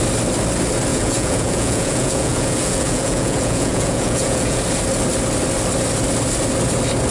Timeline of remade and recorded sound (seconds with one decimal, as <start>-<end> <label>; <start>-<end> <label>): 0.0-0.9 recorded; 0.9-4.6 remade; 4.6-7.1 recorded

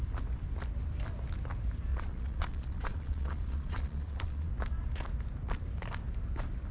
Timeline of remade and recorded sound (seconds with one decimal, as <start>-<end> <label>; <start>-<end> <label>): 0.0-1.9 recorded; 1.9-4.5 remade; 4.5-6.7 recorded

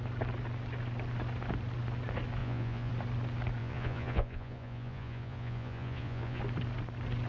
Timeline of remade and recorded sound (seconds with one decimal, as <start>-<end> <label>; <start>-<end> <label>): 0.0-2.4 recorded; 2.4-2.9 remade; 2.9-3.6 recorded; 3.6-6.4 remade; 6.4-7.3 recorded

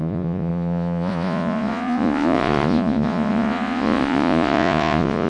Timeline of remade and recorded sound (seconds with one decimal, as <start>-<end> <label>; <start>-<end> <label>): 0.0-5.3 remade

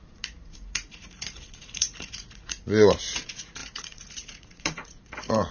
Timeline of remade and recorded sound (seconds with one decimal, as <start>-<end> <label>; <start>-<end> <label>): 0.0-5.5 remade

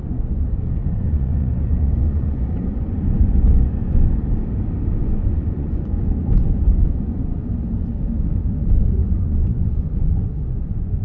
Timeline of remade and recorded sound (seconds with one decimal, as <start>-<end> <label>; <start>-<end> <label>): 0.0-4.2 remade; 4.2-5.0 recorded; 5.0-7.4 remade; 7.4-8.4 recorded; 8.4-11.0 remade

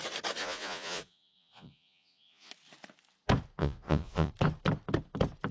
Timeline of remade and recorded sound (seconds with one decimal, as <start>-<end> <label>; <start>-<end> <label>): 0.0-0.4 recorded; 0.4-2.5 remade; 2.5-3.6 recorded; 3.6-4.3 remade; 4.3-5.5 recorded